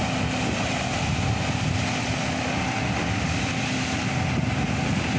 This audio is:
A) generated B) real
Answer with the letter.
B